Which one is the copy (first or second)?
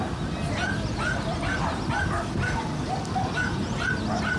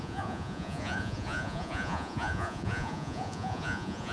second